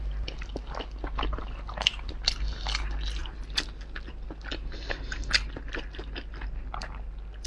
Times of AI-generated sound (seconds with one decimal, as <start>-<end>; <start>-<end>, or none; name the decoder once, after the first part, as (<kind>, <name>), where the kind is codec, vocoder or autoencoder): none